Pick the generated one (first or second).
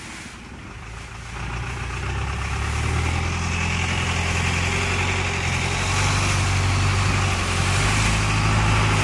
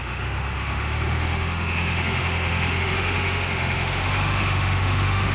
second